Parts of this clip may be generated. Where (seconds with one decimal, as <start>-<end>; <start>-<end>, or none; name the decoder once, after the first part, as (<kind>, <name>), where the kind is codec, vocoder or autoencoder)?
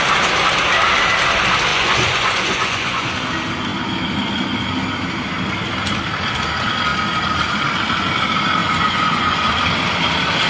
1.7-3.1 (vocoder, Vocos); 8.6-9.5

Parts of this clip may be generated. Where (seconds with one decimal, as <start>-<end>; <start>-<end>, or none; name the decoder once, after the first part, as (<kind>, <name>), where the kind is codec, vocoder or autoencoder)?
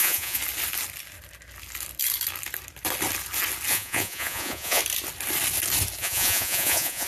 0.0-0.4 (vocoder, Vocos); 3.7-4.8; 6.0-7.1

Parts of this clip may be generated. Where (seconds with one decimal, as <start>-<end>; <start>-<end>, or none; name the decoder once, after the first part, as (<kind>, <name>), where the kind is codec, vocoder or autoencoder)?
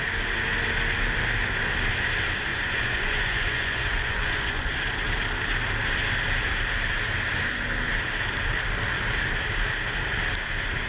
2.5-4.7 (vocoder, Vocos)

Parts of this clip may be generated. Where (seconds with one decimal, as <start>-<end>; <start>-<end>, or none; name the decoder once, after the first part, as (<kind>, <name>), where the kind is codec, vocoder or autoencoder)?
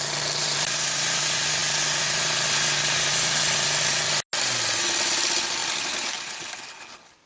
none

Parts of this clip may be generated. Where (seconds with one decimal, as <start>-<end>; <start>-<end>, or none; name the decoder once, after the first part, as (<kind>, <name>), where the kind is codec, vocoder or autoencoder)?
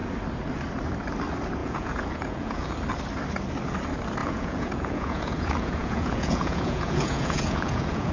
1.6-2.7 (vocoder, Vocos); 4.2-8.1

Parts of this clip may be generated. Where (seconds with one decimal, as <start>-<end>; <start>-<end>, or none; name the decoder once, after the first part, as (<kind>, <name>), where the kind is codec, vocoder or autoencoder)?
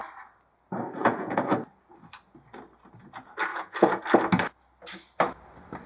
1.0-1.5 (vocoder, Vocos); 3.5-4.0